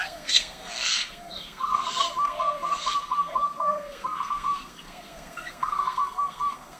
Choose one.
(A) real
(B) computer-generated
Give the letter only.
B